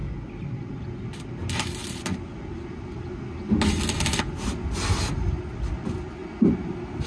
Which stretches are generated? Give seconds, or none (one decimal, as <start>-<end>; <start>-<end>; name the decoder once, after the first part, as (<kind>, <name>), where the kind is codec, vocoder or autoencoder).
none